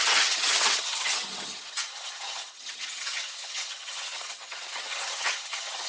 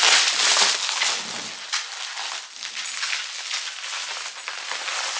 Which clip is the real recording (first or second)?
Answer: second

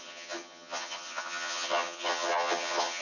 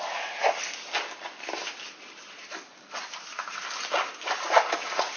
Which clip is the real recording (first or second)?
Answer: second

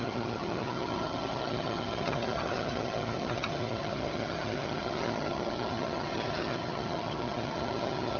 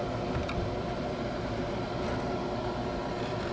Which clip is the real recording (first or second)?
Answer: second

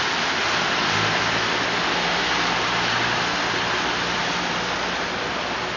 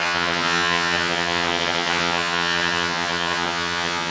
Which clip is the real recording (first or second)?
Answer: first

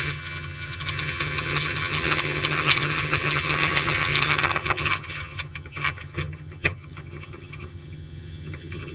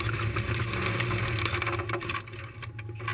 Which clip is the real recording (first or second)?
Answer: second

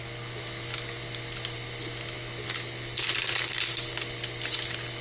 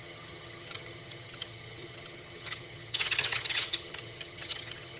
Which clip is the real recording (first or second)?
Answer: first